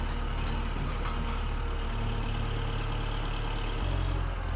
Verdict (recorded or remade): recorded